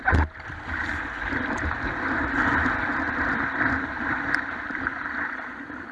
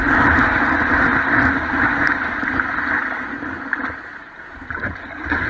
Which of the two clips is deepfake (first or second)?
first